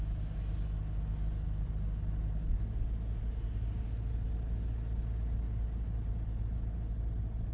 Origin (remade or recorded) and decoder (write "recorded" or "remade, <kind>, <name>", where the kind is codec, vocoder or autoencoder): recorded